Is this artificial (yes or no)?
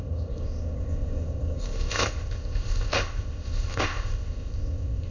yes